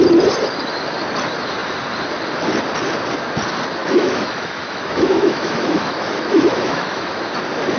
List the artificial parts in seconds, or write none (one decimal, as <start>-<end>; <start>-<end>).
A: 3.8-7.1